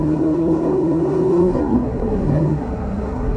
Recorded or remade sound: remade